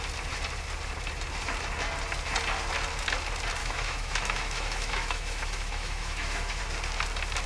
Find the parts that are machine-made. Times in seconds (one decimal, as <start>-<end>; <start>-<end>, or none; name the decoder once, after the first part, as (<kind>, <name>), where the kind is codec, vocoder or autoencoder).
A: 3.6-6.6 (autoencoder, DAC-VAE)